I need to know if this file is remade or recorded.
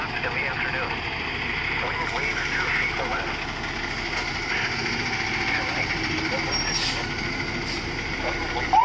recorded